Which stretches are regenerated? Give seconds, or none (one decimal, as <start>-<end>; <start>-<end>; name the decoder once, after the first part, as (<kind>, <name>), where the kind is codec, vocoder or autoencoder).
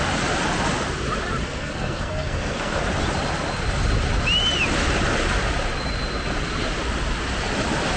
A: 1.4-2.8 (codec, SNAC)